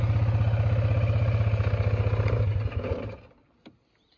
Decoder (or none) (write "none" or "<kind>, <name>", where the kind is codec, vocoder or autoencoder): none